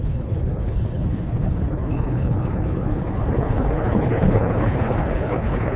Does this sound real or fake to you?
fake